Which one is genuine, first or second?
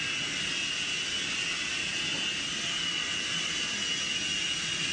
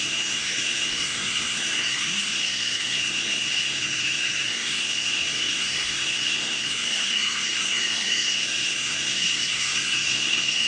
first